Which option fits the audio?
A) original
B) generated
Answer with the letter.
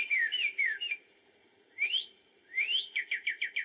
B